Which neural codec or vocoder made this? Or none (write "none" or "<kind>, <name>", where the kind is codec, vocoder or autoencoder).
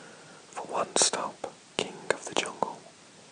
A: none